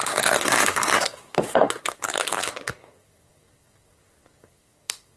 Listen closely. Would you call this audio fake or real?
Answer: fake